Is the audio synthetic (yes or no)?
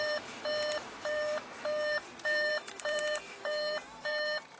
yes